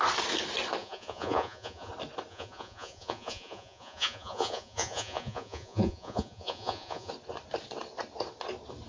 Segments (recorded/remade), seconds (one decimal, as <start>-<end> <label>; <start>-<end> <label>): 0.0-0.8 recorded; 0.8-1.9 remade; 1.9-2.3 recorded; 2.3-7.1 remade; 7.1-8.9 recorded